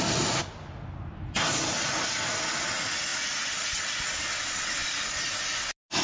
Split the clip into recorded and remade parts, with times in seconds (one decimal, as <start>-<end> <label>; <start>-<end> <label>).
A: 0.0-3.1 recorded; 3.1-3.6 remade; 3.6-6.0 recorded